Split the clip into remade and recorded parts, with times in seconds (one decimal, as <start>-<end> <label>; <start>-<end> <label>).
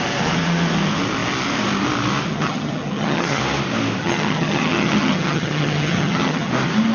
0.0-2.3 recorded; 2.3-3.4 remade; 3.4-4.0 recorded; 4.0-6.5 remade; 6.5-6.9 recorded